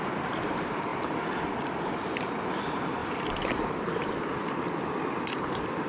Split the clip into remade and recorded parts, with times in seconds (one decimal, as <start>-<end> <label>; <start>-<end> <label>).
0.0-0.9 recorded; 0.9-1.8 remade; 1.8-3.0 recorded; 3.0-5.9 remade

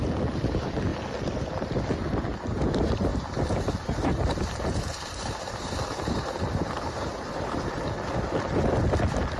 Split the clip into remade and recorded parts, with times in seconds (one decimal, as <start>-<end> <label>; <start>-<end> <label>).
0.0-3.1 recorded; 3.1-7.8 remade; 7.8-9.4 recorded

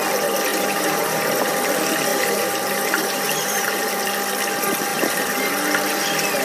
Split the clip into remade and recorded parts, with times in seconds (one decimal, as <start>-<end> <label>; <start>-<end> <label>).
0.0-0.5 recorded; 0.5-1.5 remade; 1.5-2.1 recorded; 2.1-3.9 remade; 3.9-4.9 recorded; 4.9-5.7 remade; 5.7-6.4 recorded

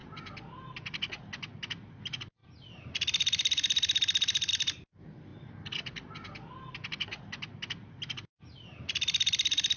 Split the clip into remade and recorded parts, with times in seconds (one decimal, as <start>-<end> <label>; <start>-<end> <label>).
0.0-9.8 recorded

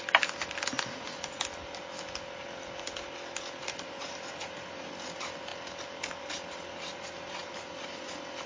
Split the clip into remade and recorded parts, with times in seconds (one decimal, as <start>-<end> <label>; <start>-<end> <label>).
0.0-3.6 recorded; 3.6-4.9 remade; 4.9-6.9 recorded; 6.9-7.5 remade; 7.5-8.5 recorded

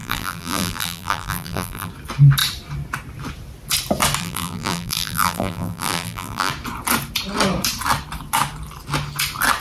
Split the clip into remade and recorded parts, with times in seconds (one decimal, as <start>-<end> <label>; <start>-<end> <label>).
0.0-1.9 remade; 1.9-4.2 recorded; 4.2-6.5 remade; 6.5-9.6 recorded